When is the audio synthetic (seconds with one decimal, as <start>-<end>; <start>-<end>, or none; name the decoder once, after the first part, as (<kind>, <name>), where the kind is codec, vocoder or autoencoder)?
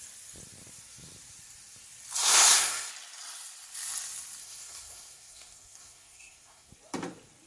2.2-2.9 (codec, SNAC); 4.4-6.7